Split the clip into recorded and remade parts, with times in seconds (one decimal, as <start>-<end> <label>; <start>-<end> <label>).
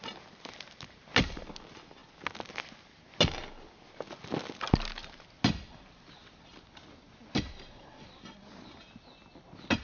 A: 0.0-9.8 recorded